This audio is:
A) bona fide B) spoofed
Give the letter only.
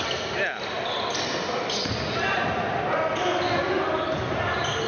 A